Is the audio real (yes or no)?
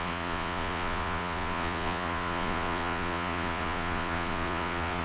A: no